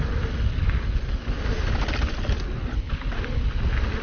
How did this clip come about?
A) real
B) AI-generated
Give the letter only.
A